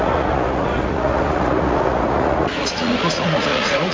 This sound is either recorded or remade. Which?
remade